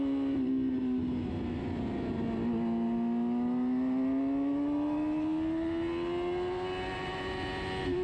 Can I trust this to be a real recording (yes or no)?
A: yes